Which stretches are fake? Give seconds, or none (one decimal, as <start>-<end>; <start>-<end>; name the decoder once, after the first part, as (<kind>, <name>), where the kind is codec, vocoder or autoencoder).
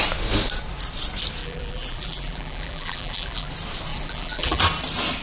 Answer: 1.4-3.5 (vocoder, BigVGAN v2); 3.9-4.6